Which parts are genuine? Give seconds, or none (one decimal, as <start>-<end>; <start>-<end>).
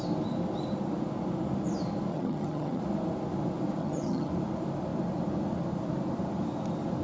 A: 0.0-2.1; 2.8-3.8; 4.3-7.0